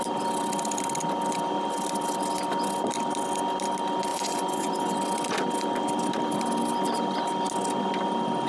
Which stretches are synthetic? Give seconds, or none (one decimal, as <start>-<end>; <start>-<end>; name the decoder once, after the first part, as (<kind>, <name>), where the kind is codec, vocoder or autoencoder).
4.1-4.9 (vocoder, Vocos)